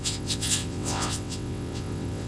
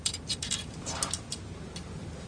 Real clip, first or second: second